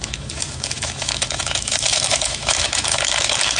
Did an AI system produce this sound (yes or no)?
yes